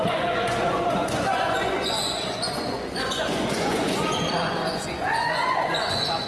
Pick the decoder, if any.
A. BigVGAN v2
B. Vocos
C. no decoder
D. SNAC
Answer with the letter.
B